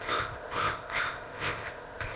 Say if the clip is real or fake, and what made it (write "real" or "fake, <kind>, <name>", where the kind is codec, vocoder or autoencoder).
fake, codec, ZipCodec